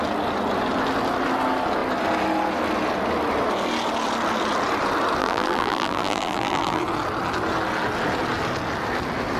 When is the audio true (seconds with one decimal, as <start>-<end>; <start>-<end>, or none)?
0.0-5.2; 6.8-9.4